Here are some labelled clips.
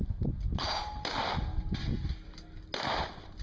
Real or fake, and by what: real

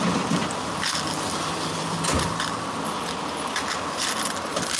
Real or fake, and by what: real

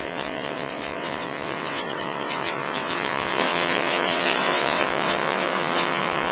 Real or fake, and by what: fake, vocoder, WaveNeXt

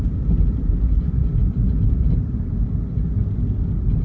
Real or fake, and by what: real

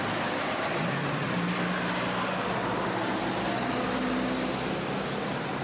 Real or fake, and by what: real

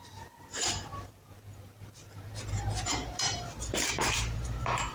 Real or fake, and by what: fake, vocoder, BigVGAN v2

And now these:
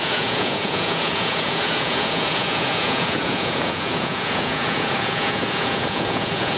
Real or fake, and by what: fake, vocoder, Vocos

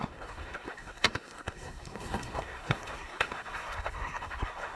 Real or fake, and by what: fake, codec, SNAC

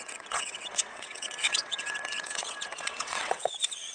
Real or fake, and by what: fake, vocoder, WaveNeXt